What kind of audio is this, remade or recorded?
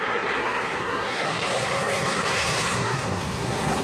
remade